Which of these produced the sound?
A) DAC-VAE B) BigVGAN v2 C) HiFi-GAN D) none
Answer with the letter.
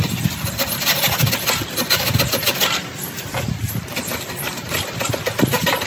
D